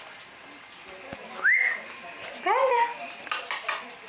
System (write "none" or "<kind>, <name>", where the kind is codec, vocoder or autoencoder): none